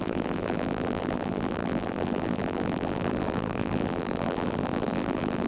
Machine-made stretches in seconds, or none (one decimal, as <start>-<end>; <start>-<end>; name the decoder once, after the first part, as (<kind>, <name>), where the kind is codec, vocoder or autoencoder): 0.0-5.5 (vocoder, BigVGAN v2)